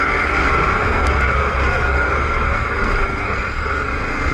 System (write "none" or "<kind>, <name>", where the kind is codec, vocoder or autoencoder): codec, SNAC